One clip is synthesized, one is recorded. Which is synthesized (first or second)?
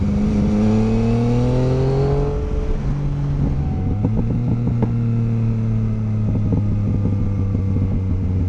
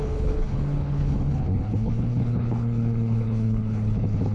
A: second